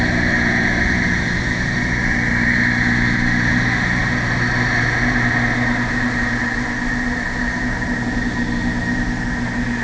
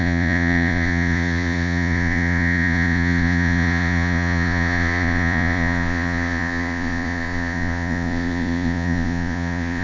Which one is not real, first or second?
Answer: second